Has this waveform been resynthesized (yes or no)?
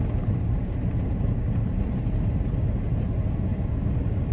yes